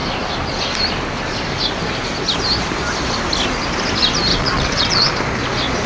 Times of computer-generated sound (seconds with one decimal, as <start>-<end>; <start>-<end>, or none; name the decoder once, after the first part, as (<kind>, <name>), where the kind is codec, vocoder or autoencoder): 4.3-5.1 (vocoder, WaveNeXt)